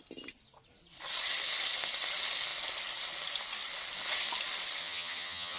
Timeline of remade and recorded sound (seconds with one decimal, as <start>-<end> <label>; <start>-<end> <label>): 0.0-4.8 recorded; 4.8-5.6 remade